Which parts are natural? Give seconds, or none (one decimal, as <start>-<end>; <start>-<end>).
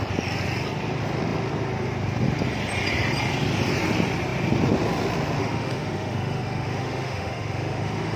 0.0-5.4